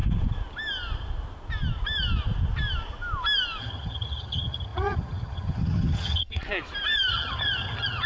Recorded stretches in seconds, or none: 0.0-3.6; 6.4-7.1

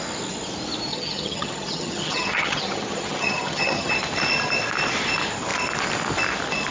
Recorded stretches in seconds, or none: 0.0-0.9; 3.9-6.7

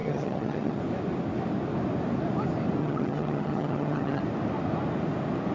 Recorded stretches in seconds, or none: 0.8-2.8; 4.2-5.5

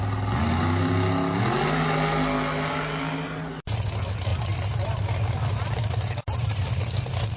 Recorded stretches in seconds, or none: 0.0-7.4

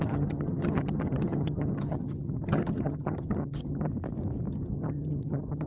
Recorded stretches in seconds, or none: 3.9-4.5

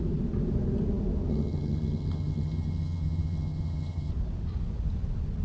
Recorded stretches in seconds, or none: 0.0-1.3; 4.1-5.4

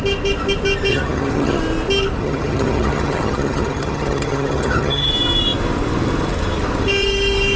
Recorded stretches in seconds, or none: 0.0-0.9; 1.6-2.2; 5.1-7.6